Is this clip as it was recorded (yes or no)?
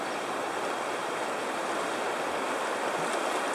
yes